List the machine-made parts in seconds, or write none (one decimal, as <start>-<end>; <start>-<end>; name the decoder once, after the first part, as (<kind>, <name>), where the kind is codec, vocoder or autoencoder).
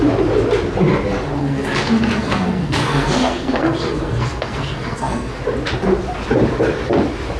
1.4-5.4 (codec, SNAC)